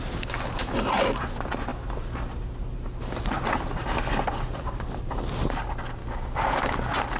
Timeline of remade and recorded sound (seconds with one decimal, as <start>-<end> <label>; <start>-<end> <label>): 0.0-6.0 recorded; 6.0-6.6 remade; 6.6-7.2 recorded